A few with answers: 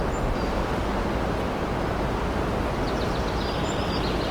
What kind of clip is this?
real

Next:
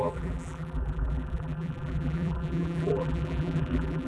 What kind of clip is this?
fake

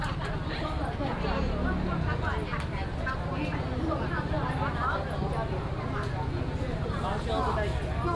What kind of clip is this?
real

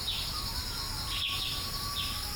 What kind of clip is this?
real